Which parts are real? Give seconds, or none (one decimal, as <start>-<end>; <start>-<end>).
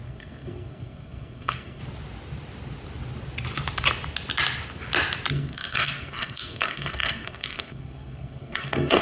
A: 1.8-5.3